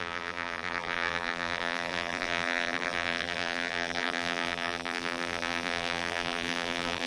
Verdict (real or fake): fake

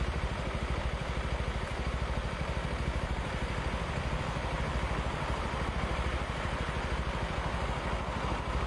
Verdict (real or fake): fake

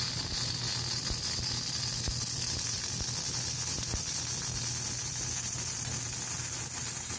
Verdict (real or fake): real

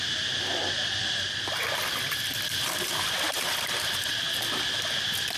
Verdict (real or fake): real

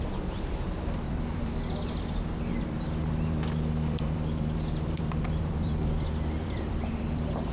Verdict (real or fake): fake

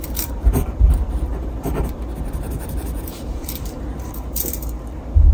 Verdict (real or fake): fake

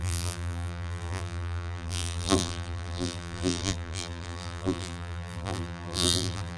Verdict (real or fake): fake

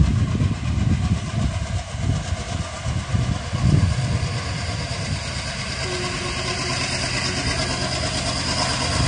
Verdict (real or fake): real